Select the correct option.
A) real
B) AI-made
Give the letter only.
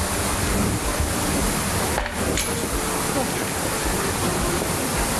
A